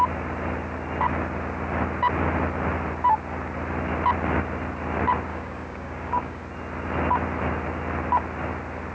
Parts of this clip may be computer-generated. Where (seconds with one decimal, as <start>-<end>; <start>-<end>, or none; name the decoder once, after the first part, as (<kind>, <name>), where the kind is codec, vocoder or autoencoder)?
5.3-6.4 (codec, DAC)